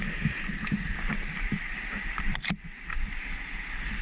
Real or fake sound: real